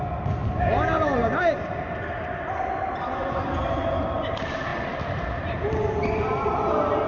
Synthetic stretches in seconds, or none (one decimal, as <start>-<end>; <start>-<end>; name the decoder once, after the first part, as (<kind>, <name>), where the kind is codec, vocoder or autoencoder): none